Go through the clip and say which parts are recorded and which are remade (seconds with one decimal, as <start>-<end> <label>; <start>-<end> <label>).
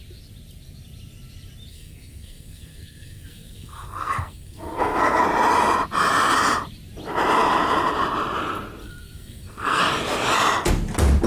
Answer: 0.0-1.7 recorded; 1.7-5.2 remade; 5.2-8.8 recorded; 8.8-9.8 remade; 9.8-11.3 recorded